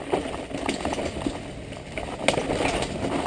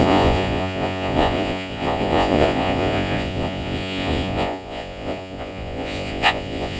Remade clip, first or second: second